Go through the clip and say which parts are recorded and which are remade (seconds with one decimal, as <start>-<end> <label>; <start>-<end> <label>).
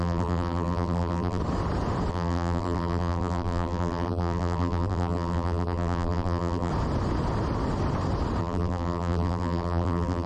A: 0.0-1.4 remade; 1.4-2.1 recorded; 2.1-6.7 remade; 6.7-8.4 recorded; 8.4-10.3 remade